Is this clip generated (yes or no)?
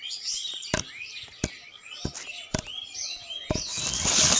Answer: no